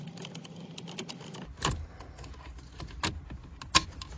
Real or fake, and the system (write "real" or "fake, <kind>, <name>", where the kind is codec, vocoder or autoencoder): real